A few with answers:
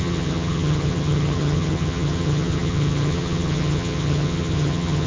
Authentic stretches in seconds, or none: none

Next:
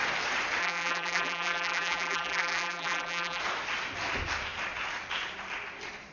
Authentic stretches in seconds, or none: 0.0-0.6; 3.4-6.1

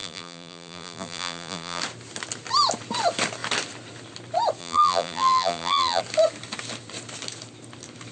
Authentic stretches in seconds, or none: 1.8-4.6; 6.0-8.1